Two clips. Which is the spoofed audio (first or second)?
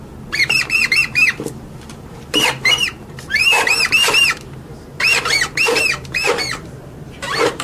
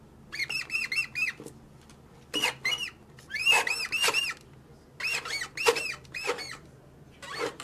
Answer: first